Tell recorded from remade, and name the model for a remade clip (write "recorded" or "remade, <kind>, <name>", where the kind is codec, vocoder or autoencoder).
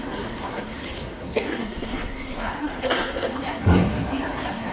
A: remade, codec, SNAC